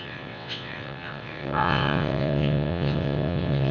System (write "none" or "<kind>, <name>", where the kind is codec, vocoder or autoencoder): vocoder, WaveNeXt